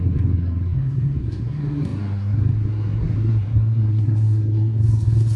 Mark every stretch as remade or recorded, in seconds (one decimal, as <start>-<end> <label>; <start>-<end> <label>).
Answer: 0.0-5.4 remade